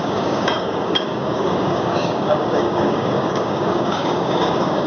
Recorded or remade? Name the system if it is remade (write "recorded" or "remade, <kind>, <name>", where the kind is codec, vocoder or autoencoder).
remade, codec, DAC